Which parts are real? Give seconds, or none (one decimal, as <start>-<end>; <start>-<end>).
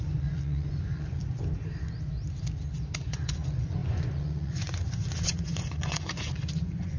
1.2-3.0